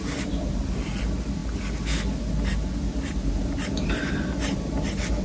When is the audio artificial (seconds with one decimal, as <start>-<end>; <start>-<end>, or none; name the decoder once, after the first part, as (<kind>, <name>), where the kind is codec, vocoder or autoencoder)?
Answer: none